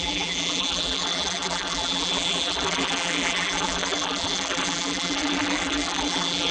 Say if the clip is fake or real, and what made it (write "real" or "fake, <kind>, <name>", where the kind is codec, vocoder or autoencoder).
fake, vocoder, BigVGAN v2